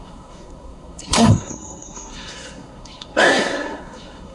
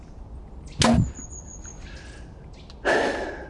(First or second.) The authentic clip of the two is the second